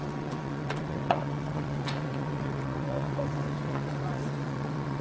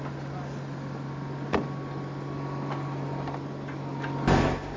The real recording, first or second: second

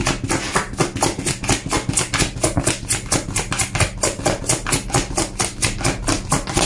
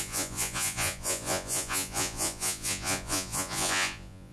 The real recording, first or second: first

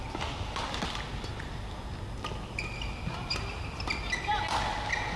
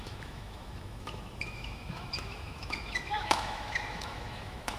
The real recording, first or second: first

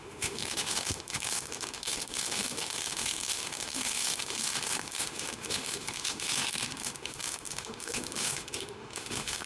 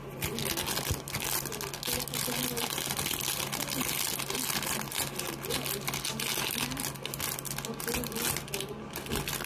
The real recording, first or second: second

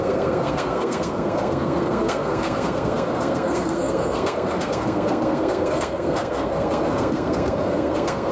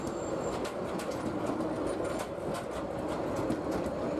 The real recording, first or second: second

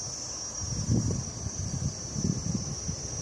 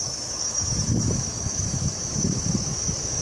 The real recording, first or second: first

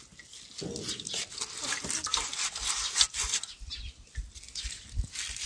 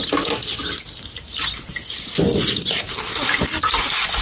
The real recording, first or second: first